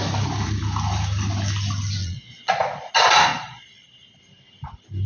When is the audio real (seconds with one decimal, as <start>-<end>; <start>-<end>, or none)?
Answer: 0.0-2.0; 2.9-3.3; 4.2-5.1